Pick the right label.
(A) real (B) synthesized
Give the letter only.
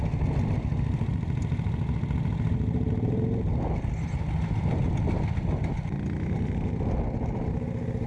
A